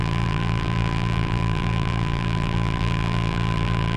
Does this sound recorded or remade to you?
remade